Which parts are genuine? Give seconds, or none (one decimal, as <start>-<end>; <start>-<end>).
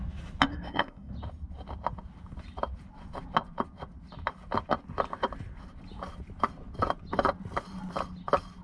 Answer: 0.0-0.5; 1.1-8.6